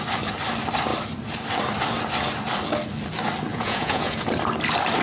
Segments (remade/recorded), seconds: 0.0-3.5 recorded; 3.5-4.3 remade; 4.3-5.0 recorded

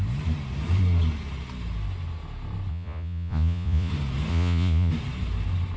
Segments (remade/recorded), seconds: 0.0-2.7 recorded; 2.7-3.9 remade; 3.9-4.3 recorded; 4.3-4.9 remade; 4.9-5.8 recorded

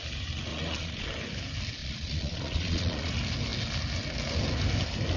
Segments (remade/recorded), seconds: 0.0-0.5 recorded; 0.5-1.1 remade; 1.1-1.8 recorded; 1.8-3.1 remade; 3.1-5.2 recorded

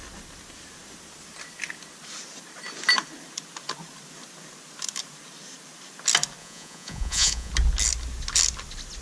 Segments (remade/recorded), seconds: 0.0-6.4 recorded; 6.4-7.5 remade; 7.5-9.0 recorded

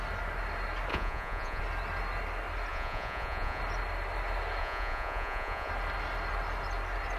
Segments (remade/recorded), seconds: 0.0-0.9 recorded; 0.9-1.6 remade; 1.6-2.7 recorded; 2.7-3.6 remade; 3.6-4.6 recorded; 4.6-5.7 remade; 5.7-7.2 recorded

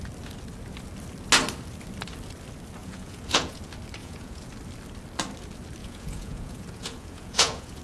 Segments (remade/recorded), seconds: 0.0-2.8 recorded; 2.8-3.6 remade; 3.6-4.0 recorded; 4.0-4.5 remade; 4.5-5.8 recorded; 5.8-7.8 remade

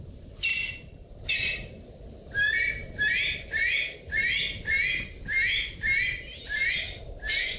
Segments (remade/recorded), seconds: 0.0-7.6 recorded